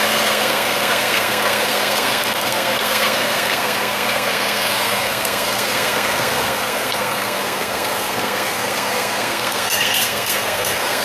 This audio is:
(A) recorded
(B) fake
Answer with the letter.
B